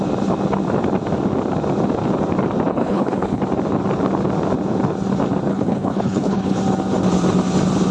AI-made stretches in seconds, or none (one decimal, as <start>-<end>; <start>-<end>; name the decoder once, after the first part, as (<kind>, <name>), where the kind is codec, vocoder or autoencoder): 2.7-3.4 (codec, HILCodec); 5.5-6.6